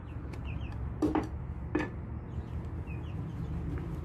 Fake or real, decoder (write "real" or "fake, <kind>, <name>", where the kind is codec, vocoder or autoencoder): real